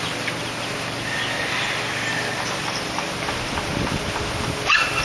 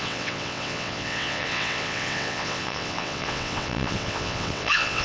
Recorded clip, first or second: first